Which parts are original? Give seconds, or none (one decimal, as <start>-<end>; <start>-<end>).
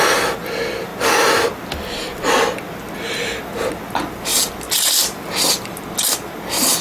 0.0-4.3; 5.8-6.8